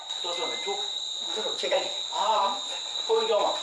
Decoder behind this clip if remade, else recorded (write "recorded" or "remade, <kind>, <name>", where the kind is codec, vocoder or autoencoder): remade, vocoder, BigVGAN v2